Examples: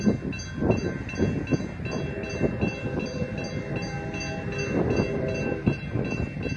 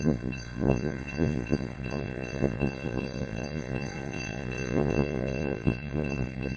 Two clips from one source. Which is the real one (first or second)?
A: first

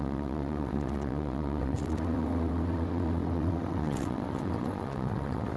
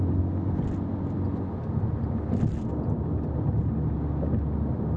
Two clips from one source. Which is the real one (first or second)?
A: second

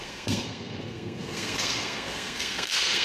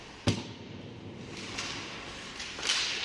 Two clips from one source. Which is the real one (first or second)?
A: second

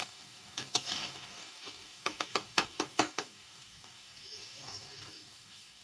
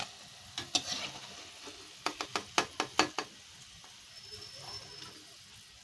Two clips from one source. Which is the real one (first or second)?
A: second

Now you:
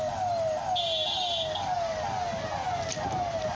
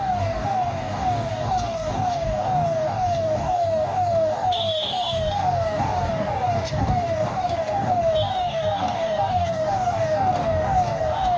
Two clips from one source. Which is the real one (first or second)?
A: first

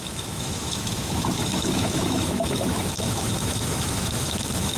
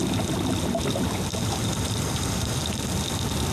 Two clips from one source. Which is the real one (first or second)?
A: second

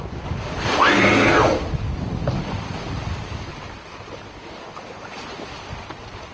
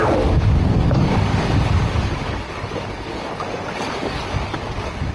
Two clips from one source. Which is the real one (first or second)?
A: first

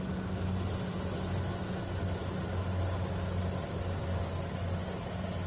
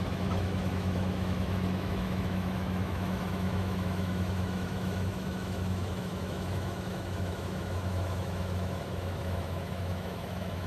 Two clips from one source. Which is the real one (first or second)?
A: first